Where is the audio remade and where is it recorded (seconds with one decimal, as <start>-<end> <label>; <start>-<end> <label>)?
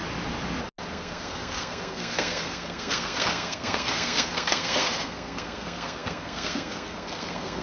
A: 0.0-0.9 recorded; 0.9-7.6 remade